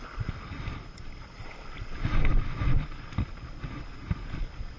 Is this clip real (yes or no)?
yes